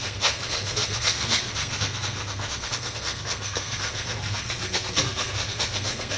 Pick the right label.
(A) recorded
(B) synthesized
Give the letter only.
B